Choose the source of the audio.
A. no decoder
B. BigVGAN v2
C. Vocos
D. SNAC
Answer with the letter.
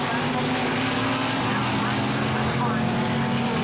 A